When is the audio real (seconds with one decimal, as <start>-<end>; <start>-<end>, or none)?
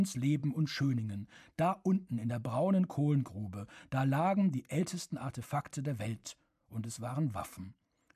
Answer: 0.0-0.4; 2.3-6.2